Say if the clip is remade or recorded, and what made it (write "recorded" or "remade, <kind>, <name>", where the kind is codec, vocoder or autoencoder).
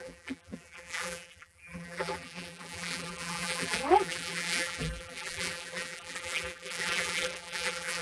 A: remade, vocoder, BigVGAN v2